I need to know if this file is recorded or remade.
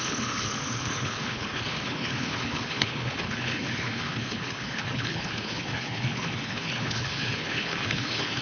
remade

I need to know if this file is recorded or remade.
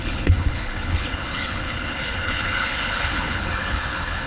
remade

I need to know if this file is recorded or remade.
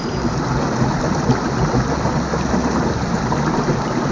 recorded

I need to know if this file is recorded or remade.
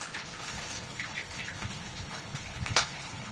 remade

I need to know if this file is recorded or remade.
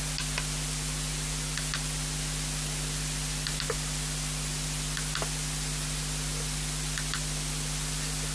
recorded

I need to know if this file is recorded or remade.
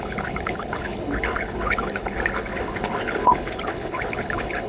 remade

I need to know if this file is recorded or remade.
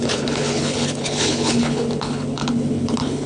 remade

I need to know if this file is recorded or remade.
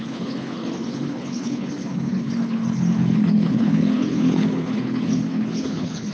remade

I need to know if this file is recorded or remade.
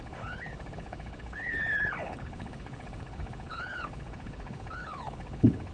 remade